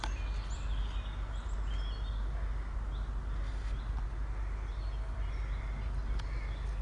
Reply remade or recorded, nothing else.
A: recorded